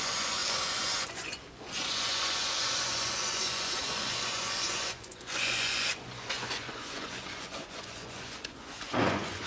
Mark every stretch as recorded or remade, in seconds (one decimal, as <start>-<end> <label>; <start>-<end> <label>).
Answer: 0.0-9.5 remade